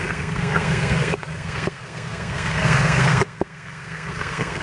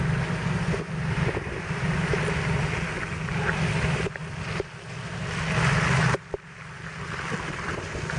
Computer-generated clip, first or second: first